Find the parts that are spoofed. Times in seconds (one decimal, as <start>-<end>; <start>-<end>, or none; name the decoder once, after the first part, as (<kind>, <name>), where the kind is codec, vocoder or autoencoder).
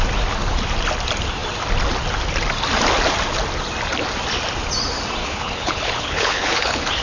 5.2-7.0 (codec, HILCodec)